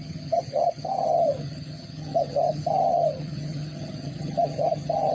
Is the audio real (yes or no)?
no